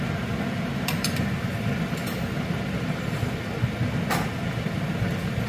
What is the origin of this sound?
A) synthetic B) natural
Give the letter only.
B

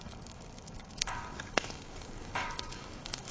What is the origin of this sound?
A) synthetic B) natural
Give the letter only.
A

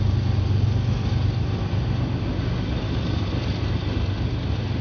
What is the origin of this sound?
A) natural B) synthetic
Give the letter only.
A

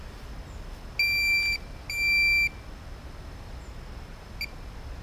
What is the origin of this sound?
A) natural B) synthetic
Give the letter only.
A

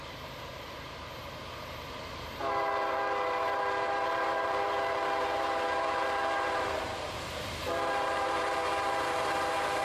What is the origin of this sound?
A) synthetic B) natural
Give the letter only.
A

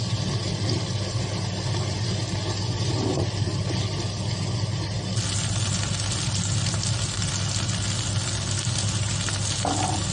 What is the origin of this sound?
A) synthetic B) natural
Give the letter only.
B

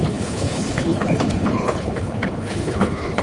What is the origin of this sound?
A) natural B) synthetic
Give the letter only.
B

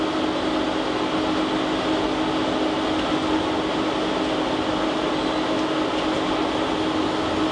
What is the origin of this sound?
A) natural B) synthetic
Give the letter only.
A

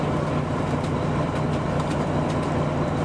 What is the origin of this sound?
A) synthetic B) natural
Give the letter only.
B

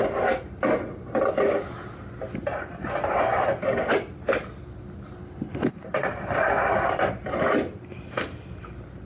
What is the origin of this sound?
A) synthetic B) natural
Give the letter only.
B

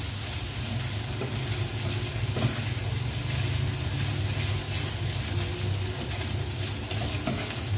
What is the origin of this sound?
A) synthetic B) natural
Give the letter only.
B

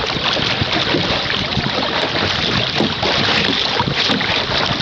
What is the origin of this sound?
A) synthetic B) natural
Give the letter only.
B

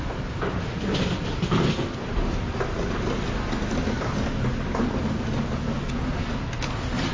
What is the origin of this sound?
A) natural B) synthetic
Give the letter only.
A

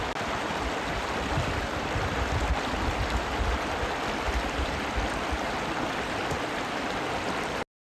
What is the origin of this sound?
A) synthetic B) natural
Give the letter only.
B